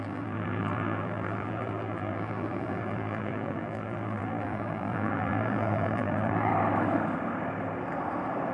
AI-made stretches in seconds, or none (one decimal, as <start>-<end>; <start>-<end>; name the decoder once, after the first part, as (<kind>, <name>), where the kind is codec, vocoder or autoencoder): 0.0-6.5 (vocoder, BigVGAN v2)